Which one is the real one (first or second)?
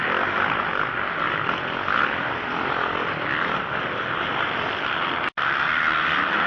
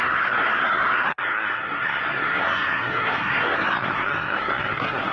first